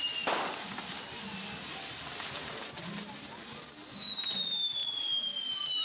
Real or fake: real